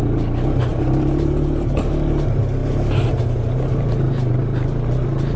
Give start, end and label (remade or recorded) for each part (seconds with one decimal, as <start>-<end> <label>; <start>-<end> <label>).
0.0-0.7 recorded; 0.7-1.8 remade; 1.8-5.4 recorded

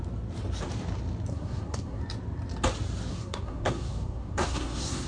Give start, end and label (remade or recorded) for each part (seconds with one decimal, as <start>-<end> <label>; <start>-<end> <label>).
0.0-1.3 recorded; 1.3-2.0 remade; 2.0-3.1 recorded; 3.1-5.1 remade

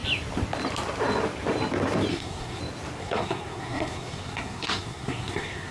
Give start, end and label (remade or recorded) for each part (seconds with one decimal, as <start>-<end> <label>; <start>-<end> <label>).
0.0-2.1 recorded; 2.1-2.6 remade; 2.6-3.0 recorded; 3.0-5.7 remade